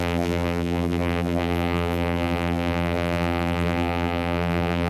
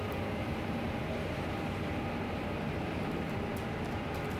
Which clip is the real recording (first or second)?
second